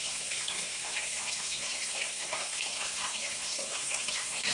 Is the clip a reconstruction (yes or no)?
yes